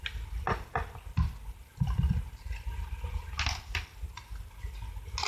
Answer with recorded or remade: recorded